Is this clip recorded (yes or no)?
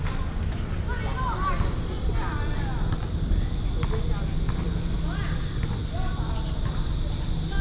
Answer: yes